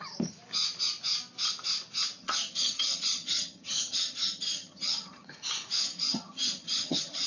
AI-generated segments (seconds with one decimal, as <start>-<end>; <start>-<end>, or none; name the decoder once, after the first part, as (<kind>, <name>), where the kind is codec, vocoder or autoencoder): 2.2-5.3 (vocoder, HiFi-GAN); 5.8-7.3